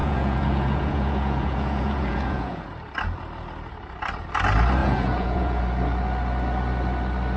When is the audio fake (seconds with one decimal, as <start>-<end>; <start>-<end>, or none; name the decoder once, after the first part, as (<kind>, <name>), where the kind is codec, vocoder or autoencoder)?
0.0-2.6 (vocoder, Vocos); 4.8-5.6